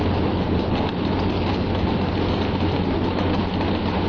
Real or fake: real